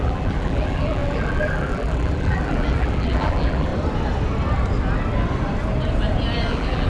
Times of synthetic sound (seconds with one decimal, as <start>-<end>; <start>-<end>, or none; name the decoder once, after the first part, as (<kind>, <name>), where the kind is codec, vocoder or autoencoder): 0.0-3.7 (vocoder, BigVGAN v2); 6.5-6.9